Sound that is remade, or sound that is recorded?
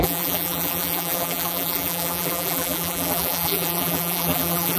remade